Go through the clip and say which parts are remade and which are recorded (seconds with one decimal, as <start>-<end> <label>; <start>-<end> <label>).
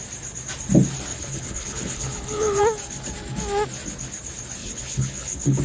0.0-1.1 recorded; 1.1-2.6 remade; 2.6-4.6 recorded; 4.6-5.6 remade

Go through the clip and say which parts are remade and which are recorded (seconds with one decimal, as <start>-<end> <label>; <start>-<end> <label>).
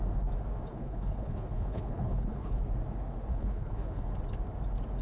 0.0-0.7 recorded; 0.7-2.6 remade; 2.6-3.3 recorded; 3.3-4.2 remade; 4.2-5.0 recorded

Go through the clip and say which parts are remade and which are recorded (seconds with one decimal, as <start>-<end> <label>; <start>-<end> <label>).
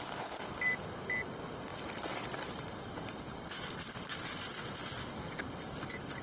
0.0-6.2 recorded